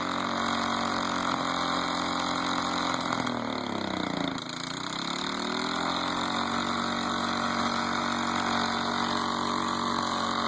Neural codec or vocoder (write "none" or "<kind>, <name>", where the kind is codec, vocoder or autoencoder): none